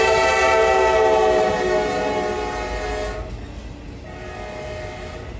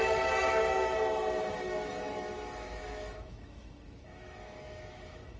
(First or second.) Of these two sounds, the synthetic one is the second